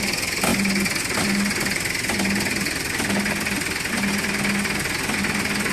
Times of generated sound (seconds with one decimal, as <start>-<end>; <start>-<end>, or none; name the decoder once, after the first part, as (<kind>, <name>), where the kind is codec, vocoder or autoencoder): none